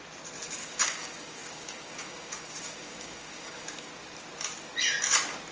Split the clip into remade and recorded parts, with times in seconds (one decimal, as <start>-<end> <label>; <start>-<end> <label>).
0.0-0.6 recorded; 0.6-3.9 remade; 3.9-5.5 recorded